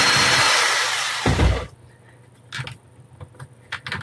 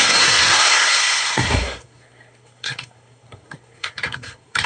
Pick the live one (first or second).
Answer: first